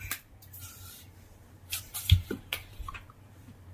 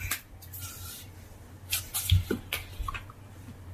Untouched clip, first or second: second